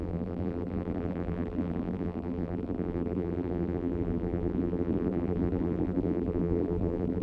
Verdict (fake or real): fake